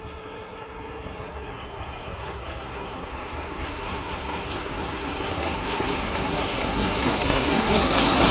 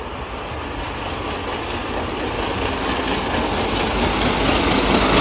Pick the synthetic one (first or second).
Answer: first